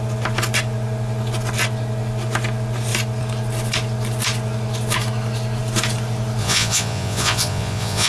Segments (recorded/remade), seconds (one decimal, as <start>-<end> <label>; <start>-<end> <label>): 0.0-6.4 recorded; 6.4-8.1 remade